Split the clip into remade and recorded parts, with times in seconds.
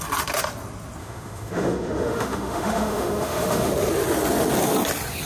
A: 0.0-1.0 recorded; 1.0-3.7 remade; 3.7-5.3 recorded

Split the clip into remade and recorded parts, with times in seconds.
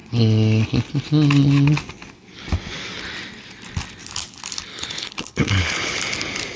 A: 0.0-4.7 recorded; 4.7-6.0 remade; 6.0-6.6 recorded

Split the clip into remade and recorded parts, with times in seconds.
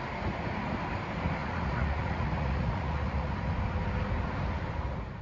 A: 0.0-1.4 recorded; 1.4-3.3 remade; 3.3-5.2 recorded